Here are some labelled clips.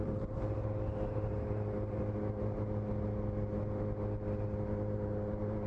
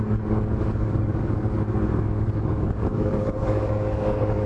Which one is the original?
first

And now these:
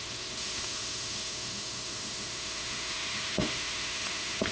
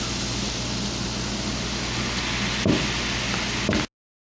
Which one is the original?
second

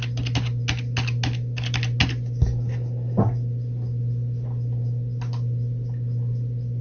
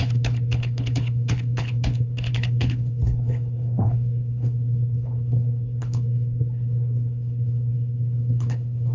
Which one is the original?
first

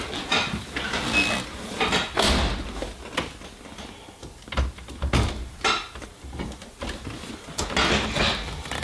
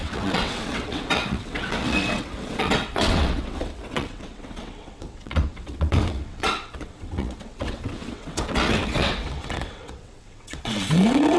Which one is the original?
first